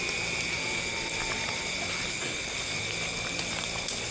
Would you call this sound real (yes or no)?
yes